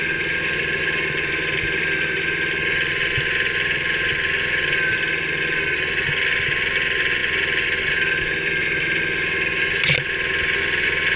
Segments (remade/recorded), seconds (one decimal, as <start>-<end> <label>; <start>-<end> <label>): 0.0-11.2 recorded

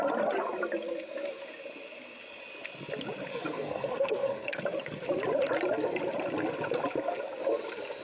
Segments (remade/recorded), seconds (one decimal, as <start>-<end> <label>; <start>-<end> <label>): 0.0-3.3 recorded; 3.3-4.6 remade; 4.6-8.0 recorded

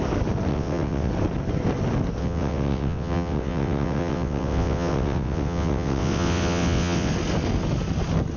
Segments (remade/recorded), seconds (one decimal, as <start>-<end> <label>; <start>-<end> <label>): 0.0-0.5 recorded; 0.5-1.1 remade; 1.1-2.2 recorded; 2.2-7.1 remade; 7.1-8.4 recorded

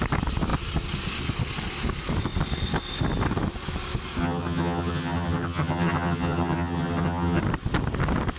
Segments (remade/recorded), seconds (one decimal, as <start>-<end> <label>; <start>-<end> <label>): 0.0-4.2 recorded; 4.2-7.4 remade; 7.4-8.4 recorded

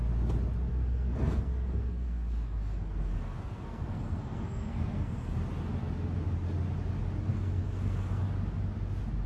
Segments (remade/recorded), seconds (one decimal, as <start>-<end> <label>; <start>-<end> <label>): 0.0-0.7 recorded; 0.7-5.4 remade; 5.4-7.3 recorded; 7.3-8.2 remade; 8.2-9.3 recorded

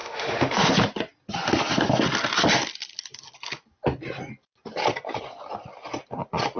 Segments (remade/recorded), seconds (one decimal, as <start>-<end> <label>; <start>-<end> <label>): 0.0-0.7 remade; 0.7-6.6 recorded

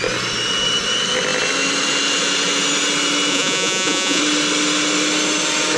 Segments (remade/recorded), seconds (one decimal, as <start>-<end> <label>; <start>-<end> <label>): 0.0-3.3 recorded; 3.3-4.2 remade; 4.2-5.8 recorded